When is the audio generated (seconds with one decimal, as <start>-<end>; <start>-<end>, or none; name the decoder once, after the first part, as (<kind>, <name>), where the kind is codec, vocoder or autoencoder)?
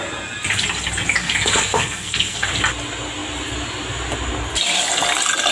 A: 1.2-2.5 (codec, SNAC)